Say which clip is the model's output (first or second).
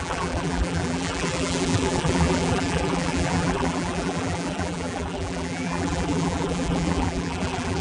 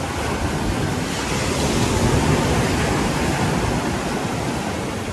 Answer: first